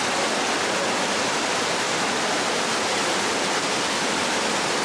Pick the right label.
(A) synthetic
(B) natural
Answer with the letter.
B